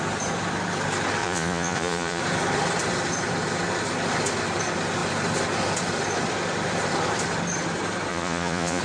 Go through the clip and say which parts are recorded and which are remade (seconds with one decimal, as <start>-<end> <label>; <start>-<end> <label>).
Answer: 0.0-1.2 recorded; 1.2-2.2 remade; 2.2-8.1 recorded; 8.1-8.8 remade